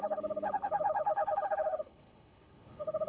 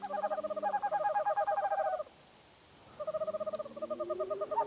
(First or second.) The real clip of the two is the second